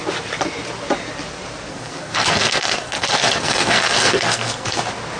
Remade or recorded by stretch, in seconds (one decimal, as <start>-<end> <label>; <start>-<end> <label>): 0.0-1.7 recorded; 1.7-4.8 remade; 4.8-5.2 recorded

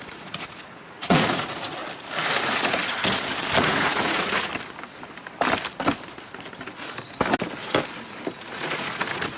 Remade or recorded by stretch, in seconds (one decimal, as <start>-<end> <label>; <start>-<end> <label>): 0.0-1.8 remade; 1.8-2.4 recorded; 2.4-2.8 remade; 2.8-3.6 recorded; 3.6-4.5 remade; 4.5-8.5 recorded; 8.5-9.4 remade

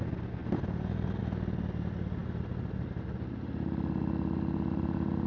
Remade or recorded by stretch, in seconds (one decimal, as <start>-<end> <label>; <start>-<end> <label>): 0.0-5.3 recorded

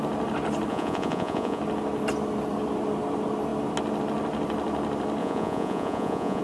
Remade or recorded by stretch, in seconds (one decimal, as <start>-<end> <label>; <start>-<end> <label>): 0.0-0.7 recorded; 0.7-1.6 remade; 1.6-5.2 recorded; 5.2-6.4 remade